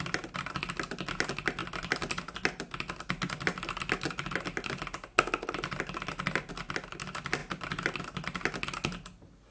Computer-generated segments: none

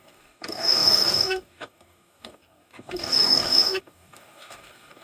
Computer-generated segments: 0.0-5.0 (codec, DAC)

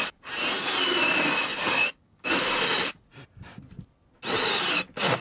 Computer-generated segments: 1.6-2.3 (codec, DAC)

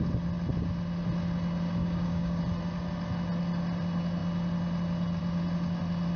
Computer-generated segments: 1.8-2.4 (codec, DAC)

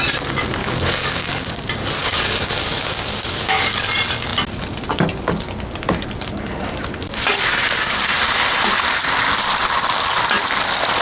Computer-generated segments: 0.6-1.4 (codec, DAC); 2.0-3.8

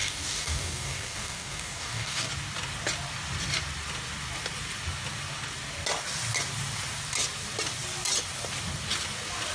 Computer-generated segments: 0.0-2.3 (codec, DAC)